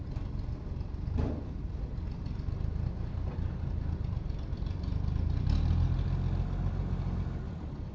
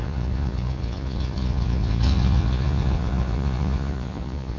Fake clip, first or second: second